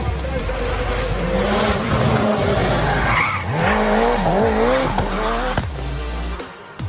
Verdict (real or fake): real